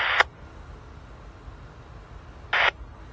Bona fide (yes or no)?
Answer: yes